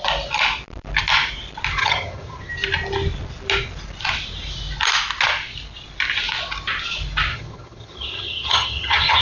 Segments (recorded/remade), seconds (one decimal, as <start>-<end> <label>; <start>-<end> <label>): 0.0-1.8 recorded; 1.8-2.5 remade; 2.5-7.3 recorded; 7.3-9.2 remade